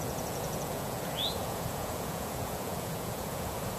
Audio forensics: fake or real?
fake